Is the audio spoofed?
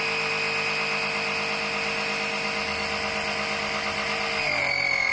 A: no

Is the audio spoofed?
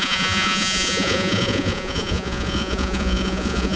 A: yes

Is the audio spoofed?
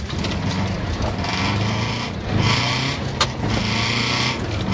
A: no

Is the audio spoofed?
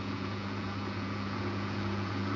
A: yes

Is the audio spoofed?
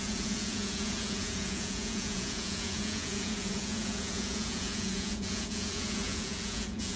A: yes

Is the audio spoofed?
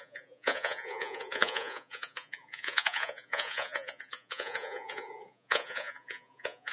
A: yes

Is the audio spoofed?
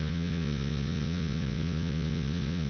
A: yes